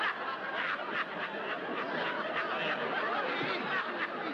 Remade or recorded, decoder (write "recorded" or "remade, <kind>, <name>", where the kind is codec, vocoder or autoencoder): recorded